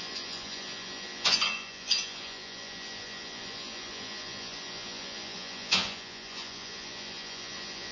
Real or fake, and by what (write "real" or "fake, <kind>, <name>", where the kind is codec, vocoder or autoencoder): fake, vocoder, Vocos